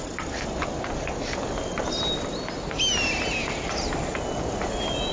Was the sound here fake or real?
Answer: real